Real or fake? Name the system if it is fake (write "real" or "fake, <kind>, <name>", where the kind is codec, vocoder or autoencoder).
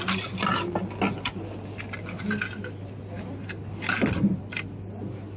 real